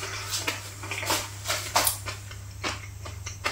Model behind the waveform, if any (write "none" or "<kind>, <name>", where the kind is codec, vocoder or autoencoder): none